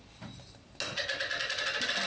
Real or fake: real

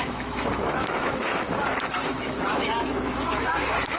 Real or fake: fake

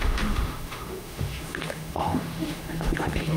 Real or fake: fake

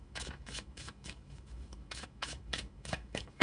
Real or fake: fake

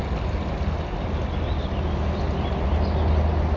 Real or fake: real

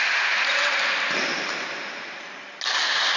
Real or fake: real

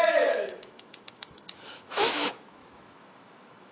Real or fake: fake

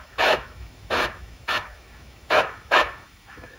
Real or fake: fake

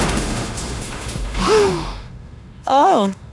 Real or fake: fake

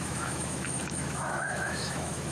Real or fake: fake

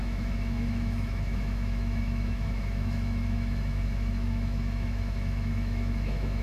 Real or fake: fake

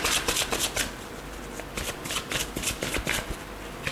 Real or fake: real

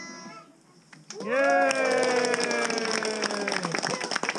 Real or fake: real